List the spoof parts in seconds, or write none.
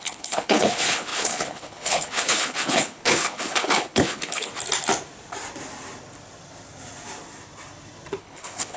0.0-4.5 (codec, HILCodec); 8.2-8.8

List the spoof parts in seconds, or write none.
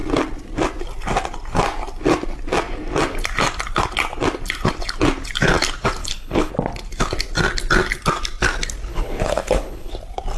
6.0-6.5 (codec, HILCodec); 8.9-9.9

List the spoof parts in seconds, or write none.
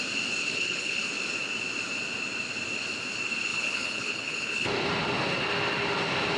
0.4-1.1 (codec, HILCodec); 3.5-4.7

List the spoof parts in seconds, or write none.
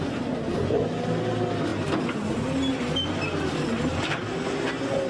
none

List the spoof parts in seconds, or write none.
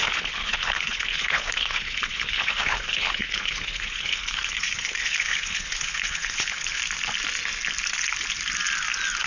0.0-6.8 (codec, HILCodec)